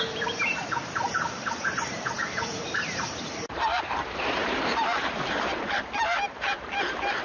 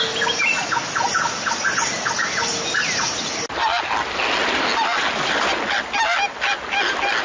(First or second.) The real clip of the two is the second